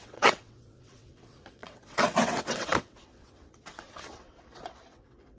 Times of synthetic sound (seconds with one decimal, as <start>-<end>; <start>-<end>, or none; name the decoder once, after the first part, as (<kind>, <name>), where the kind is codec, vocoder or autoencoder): 0.0-5.4 (vocoder, WaveNeXt)